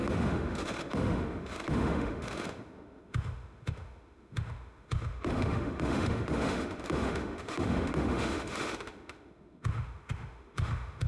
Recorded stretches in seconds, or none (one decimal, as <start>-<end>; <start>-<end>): none